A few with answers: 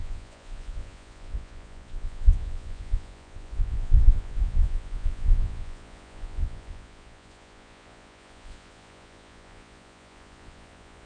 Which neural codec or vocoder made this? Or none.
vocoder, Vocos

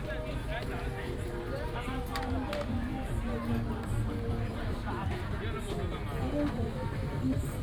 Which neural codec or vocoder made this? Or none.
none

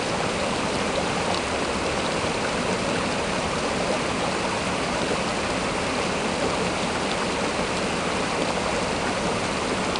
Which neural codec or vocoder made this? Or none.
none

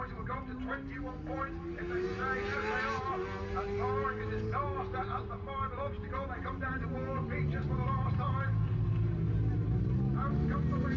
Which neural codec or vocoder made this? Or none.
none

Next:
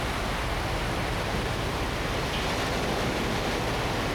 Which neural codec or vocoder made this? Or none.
none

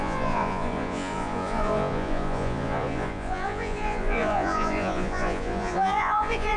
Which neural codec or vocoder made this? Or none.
vocoder, Vocos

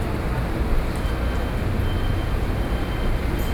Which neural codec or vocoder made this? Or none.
none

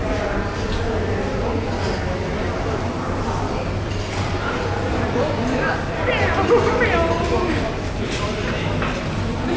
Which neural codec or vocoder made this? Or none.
none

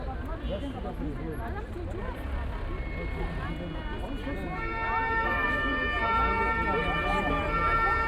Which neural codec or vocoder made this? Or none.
none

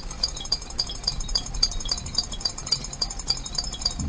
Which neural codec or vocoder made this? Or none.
vocoder, BigVGAN v2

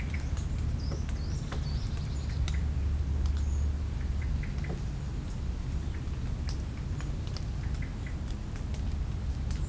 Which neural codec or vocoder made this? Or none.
none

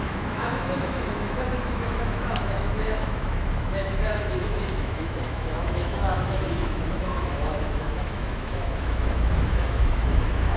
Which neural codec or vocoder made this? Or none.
autoencoder, DAC-VAE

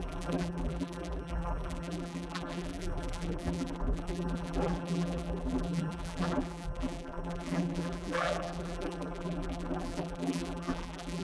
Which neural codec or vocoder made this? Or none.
vocoder, BigVGAN v2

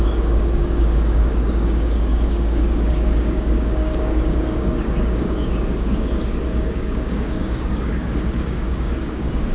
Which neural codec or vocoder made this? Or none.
codec, DAC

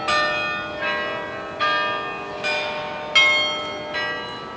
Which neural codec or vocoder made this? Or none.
none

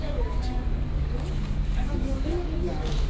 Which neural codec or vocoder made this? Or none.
codec, DAC